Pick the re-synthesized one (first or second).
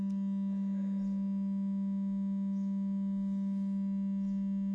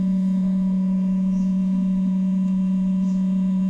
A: second